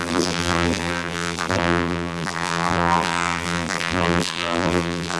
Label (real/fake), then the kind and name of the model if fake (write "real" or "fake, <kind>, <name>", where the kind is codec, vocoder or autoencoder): fake, vocoder, BigVGAN v2